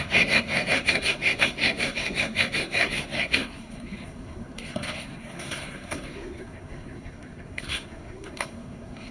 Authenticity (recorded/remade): remade